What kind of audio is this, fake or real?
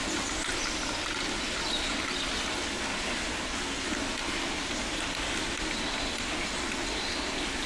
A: real